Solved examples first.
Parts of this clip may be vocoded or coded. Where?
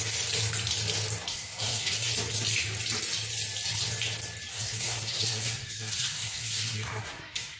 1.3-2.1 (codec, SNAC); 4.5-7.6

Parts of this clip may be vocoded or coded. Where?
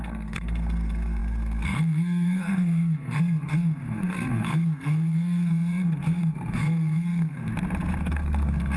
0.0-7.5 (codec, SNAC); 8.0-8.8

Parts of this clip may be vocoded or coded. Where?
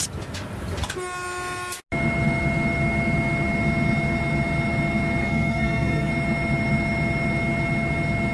5.2-6.1 (codec, SNAC)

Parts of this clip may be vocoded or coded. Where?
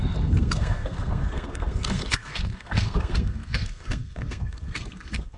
0.0-5.4 (codec, SNAC)